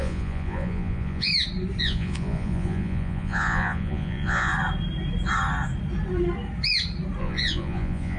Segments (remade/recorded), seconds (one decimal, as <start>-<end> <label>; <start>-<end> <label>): 0.0-1.3 remade; 1.3-1.8 recorded; 1.8-4.5 remade; 4.5-7.2 recorded; 7.2-8.2 remade